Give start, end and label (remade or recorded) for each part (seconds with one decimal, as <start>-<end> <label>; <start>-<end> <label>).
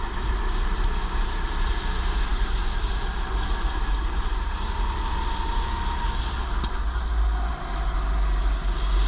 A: 0.0-9.1 recorded